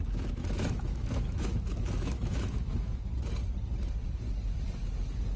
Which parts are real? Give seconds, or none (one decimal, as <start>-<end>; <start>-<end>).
0.0-0.4; 3.1-5.4